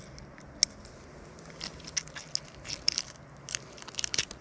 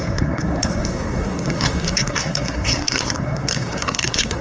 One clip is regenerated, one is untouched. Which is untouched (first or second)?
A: first